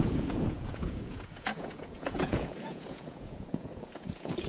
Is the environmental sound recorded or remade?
remade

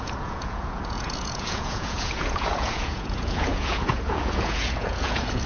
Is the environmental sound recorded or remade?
remade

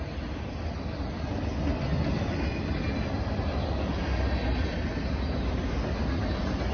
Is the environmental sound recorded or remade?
recorded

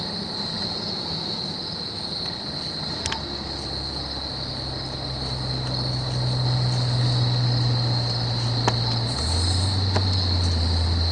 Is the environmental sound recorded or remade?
recorded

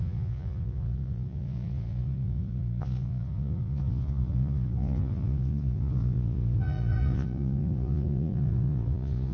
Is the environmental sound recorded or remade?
remade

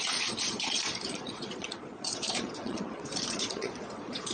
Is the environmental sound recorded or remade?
remade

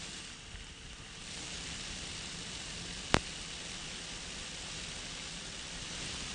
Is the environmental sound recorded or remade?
recorded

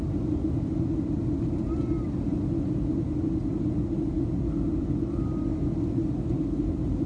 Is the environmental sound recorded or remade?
recorded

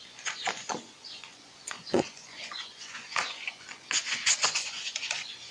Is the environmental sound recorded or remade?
remade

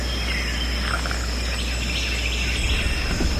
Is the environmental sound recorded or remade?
recorded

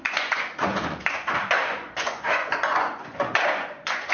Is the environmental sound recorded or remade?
remade